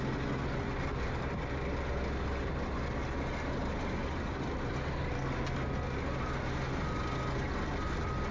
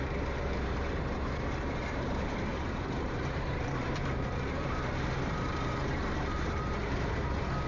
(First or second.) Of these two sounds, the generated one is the second